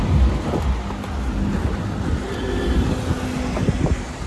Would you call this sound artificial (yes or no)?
no